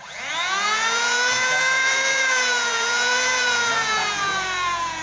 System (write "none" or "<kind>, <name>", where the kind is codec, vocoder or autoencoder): vocoder, Vocos